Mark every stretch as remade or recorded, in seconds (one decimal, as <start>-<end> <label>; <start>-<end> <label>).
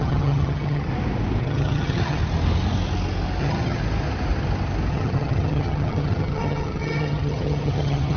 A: 0.0-0.9 remade; 0.9-1.4 recorded; 1.4-2.2 remade; 2.2-3.4 recorded; 3.4-3.8 remade; 3.8-4.9 recorded; 4.9-8.2 remade